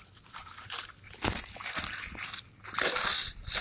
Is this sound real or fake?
real